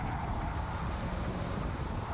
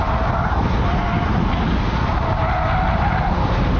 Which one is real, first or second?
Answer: second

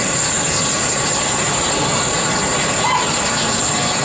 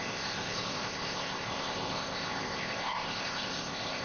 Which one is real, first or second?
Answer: first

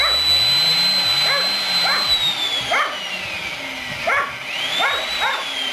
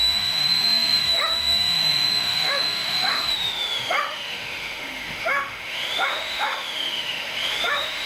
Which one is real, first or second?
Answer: first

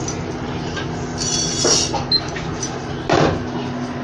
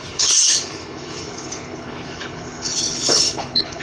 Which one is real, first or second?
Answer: first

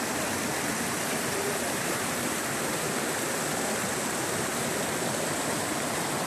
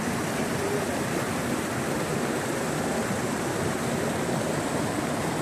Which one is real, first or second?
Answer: second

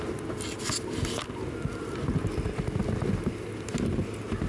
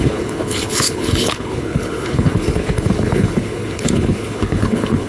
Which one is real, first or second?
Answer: first